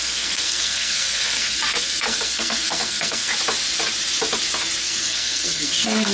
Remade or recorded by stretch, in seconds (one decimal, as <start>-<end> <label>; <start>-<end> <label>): 0.0-3.3 remade; 3.3-4.8 recorded; 4.8-6.1 remade